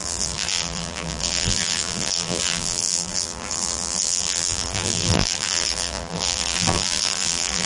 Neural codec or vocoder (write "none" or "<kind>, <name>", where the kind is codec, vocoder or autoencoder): vocoder, BigVGAN v2